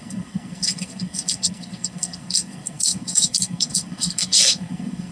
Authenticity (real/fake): fake